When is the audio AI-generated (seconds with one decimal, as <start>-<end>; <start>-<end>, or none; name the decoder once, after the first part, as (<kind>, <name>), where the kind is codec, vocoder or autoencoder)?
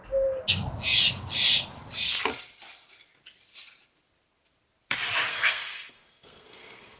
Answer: 5.3-7.0 (codec, SNAC)